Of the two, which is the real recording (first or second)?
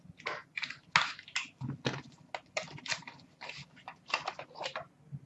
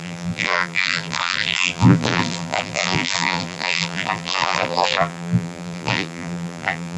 first